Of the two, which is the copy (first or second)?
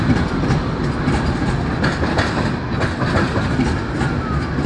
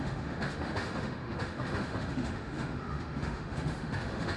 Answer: second